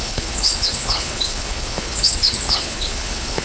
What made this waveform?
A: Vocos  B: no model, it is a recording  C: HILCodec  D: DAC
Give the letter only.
C